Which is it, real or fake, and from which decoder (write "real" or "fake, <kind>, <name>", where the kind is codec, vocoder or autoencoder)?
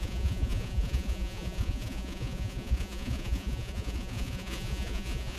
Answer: fake, vocoder, Vocos